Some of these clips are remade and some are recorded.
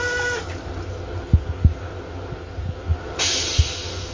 recorded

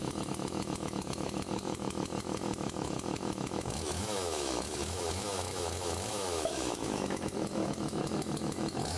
remade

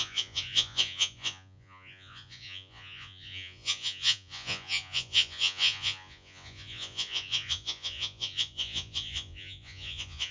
remade